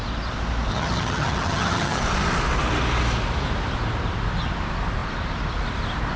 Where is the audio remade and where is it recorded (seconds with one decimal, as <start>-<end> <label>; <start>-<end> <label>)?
0.0-0.7 recorded; 0.7-2.0 remade; 2.0-6.2 recorded